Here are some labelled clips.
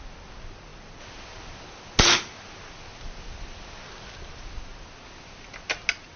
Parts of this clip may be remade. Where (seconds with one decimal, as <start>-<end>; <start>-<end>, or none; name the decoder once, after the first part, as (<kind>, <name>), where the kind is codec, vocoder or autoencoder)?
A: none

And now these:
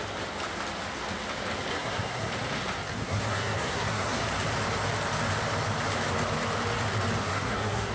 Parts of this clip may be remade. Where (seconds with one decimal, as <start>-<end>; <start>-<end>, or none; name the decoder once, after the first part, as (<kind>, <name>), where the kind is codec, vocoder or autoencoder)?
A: 1.7-2.3 (codec, SNAC); 3.0-4.2; 7.2-7.9

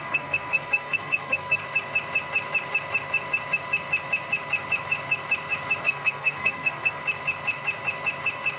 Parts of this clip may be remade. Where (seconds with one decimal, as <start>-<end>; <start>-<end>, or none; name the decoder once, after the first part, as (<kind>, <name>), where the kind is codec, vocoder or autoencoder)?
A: 0.0-1.6 (codec, SNAC); 5.8-7.0

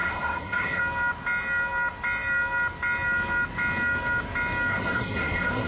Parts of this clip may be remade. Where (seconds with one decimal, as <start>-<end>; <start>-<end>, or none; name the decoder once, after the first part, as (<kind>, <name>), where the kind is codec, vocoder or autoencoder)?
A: 0.0-0.8 (codec, SNAC); 4.7-5.7

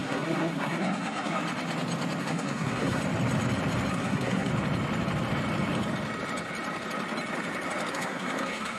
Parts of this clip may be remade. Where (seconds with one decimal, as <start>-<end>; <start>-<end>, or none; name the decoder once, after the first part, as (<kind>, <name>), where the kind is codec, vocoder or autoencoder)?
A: 0.0-1.4 (codec, SNAC); 2.2-3.0; 3.9-4.5; 7.9-8.8

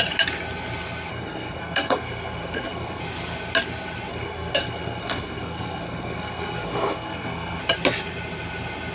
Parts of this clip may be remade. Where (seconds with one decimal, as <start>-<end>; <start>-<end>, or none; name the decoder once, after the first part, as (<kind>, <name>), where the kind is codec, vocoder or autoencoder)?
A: 1.1-3.0 (codec, SNAC); 4.1-7.6